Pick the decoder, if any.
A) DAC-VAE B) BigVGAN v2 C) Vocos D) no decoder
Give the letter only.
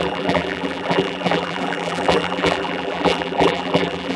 B